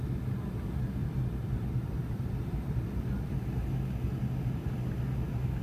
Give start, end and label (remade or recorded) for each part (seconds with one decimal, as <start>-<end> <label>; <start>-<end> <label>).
0.0-1.0 recorded; 1.0-3.7 remade; 3.7-5.6 recorded

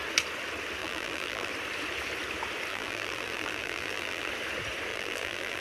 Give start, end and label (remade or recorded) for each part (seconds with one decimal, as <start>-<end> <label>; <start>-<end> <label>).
0.0-0.8 recorded; 0.8-1.5 remade; 1.5-2.7 recorded; 2.7-4.3 remade; 4.3-4.9 recorded; 4.9-5.6 remade

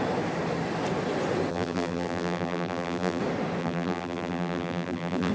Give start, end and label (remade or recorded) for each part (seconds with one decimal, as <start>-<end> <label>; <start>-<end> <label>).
0.0-1.5 recorded; 1.5-3.2 remade; 3.2-3.6 recorded; 3.6-5.3 remade

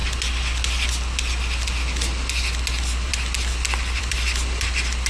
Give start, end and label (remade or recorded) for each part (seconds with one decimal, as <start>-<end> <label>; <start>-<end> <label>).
0.0-3.1 recorded; 3.1-5.1 remade

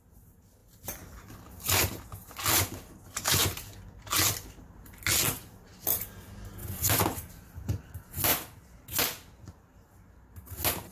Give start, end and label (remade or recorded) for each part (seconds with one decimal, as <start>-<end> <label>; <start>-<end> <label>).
0.0-0.6 recorded; 0.6-1.8 remade; 1.8-10.9 recorded

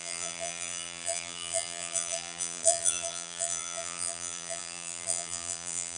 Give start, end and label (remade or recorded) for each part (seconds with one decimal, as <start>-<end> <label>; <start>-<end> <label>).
0.0-6.0 remade